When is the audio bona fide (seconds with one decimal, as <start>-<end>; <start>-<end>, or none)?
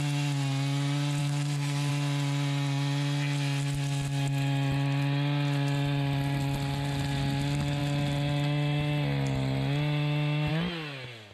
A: 0.0-1.2; 1.9-11.3